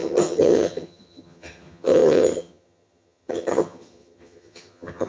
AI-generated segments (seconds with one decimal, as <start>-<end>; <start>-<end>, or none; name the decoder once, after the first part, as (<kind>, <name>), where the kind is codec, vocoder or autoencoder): 0.0-5.1 (vocoder, HiFi-GAN)

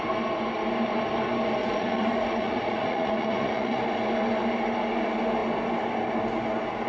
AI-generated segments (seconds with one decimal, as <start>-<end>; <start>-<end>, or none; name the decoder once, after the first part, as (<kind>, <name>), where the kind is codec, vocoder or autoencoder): 1.6-3.8 (vocoder, Vocos)

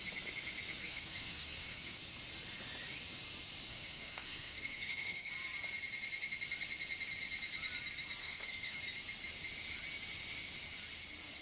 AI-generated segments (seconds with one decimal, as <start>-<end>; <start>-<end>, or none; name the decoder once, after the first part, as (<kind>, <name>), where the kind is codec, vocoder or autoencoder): 0.8-2.0 (codec, SNAC); 3.7-5.3; 8.2-8.8

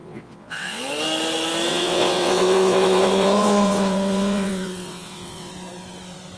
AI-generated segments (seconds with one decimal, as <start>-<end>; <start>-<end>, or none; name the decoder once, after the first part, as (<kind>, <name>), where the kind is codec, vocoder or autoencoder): 0.0-0.8 (vocoder, WaveNeXt); 1.7-5.5

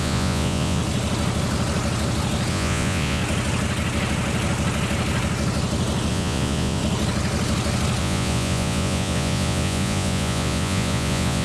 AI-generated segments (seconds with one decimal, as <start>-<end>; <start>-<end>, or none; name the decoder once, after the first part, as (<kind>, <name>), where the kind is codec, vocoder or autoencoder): 0.0-0.8 (vocoder, Vocos); 2.5-3.2; 6.1-6.8; 8.0-11.4

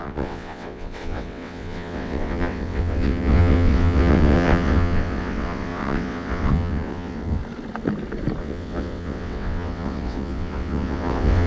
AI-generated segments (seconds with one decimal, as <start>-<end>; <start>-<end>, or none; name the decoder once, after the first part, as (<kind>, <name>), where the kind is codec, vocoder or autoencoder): 0.0-7.4 (vocoder, WaveNeXt); 8.4-11.5

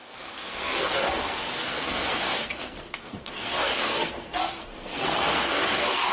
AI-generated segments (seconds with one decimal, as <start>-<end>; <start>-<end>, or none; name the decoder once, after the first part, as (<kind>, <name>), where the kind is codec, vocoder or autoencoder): 0.0-6.1 (codec, SNAC)

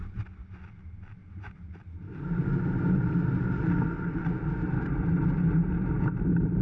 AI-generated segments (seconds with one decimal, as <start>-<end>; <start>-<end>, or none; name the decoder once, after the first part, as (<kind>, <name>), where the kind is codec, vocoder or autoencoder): none